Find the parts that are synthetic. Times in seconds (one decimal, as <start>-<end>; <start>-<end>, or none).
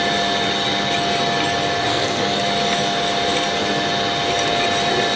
1.9-2.4